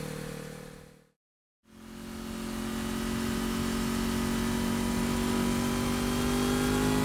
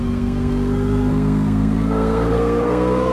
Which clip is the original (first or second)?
first